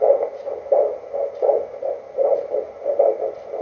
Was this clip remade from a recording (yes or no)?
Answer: no